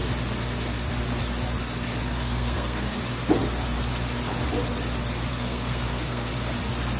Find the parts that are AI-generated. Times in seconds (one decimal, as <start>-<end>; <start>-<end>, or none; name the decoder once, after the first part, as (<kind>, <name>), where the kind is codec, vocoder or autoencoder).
2.0-3.0 (codec, SNAC); 5.3-6.3